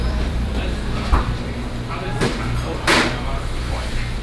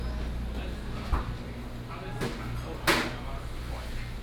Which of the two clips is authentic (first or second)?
second